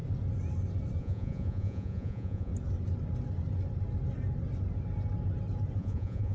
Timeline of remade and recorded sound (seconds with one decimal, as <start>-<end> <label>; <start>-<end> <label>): 0.0-1.0 recorded; 1.0-2.5 remade; 2.5-5.8 recorded; 5.8-6.3 remade